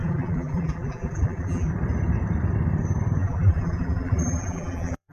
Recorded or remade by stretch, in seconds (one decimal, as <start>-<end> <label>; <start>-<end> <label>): 0.0-1.7 remade; 1.7-3.2 recorded; 3.2-5.1 remade